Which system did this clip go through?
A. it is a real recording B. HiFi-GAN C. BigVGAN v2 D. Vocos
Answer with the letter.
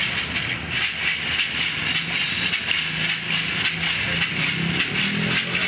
A